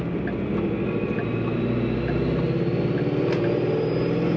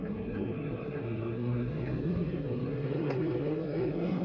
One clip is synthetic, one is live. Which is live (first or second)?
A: first